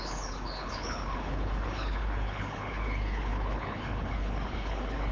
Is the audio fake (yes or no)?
yes